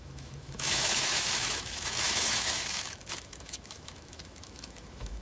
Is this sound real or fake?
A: fake